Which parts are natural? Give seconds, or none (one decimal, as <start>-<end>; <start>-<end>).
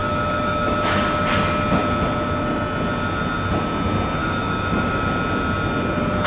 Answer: 1.0-4.2; 5.1-6.3